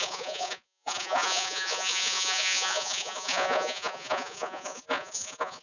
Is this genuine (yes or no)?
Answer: no